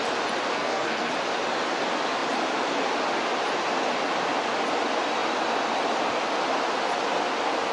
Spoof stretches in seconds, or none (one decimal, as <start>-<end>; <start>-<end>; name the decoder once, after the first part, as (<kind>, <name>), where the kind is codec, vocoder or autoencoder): 0.5-1.1 (codec, SNAC)

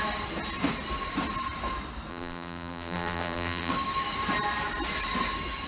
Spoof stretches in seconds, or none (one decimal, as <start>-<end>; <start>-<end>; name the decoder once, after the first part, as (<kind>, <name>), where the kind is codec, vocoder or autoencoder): 2.1-3.7 (vocoder, BigVGAN v2)

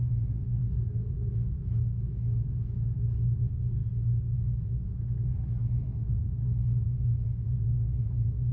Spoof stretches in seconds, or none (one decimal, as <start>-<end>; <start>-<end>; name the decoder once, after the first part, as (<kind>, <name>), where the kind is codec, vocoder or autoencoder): 0.0-3.8 (autoencoder, DAC-VAE); 5.8-8.5

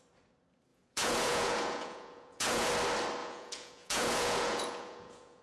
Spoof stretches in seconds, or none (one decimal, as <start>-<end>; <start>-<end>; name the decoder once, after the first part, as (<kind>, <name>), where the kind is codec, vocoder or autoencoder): 0.7-2.7 (vocoder, Vocos); 3.2-5.4

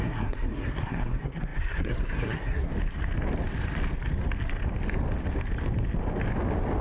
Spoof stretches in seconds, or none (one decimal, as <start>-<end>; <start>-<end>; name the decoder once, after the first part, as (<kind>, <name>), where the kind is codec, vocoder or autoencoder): 0.0-2.7 (codec, SNAC)

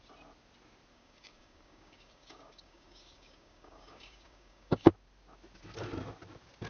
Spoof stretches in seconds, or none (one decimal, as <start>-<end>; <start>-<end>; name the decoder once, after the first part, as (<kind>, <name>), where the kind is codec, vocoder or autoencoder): 0.9-4.9 (codec, DAC)